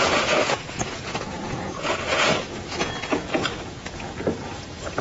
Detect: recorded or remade remade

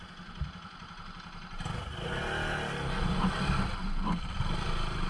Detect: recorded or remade recorded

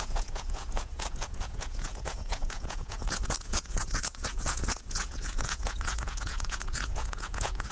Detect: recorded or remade remade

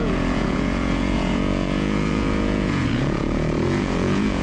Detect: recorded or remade remade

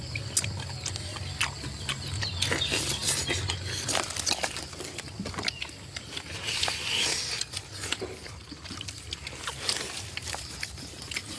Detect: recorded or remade recorded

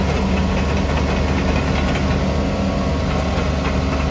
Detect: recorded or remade recorded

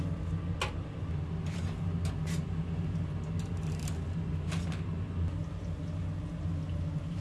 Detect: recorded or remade recorded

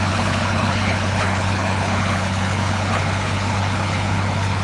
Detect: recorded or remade remade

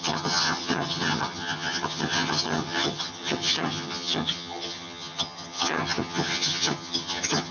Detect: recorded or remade remade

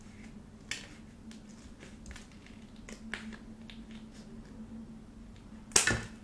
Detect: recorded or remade recorded